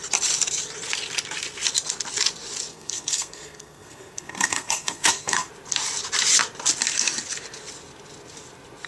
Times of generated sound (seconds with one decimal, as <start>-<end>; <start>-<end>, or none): 2.7-5.5